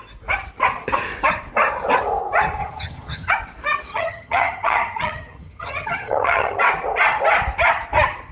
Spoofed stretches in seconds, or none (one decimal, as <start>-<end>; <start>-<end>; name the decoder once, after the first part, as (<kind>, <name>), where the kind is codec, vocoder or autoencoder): 2.6-3.3 (vocoder, HiFi-GAN); 3.9-6.6